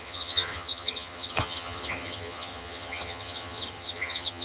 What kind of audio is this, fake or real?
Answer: fake